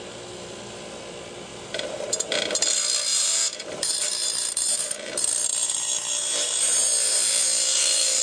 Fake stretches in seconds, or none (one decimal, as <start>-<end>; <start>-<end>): 1.5-2.3; 3.1-8.2